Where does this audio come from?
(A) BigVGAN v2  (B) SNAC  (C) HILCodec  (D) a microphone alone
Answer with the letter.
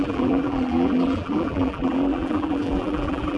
A